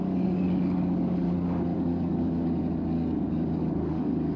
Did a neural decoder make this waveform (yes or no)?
yes